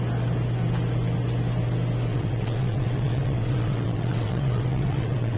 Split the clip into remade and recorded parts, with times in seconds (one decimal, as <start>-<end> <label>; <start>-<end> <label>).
0.0-2.1 recorded; 2.1-5.4 remade